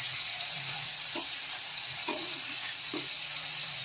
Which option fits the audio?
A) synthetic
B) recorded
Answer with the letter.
A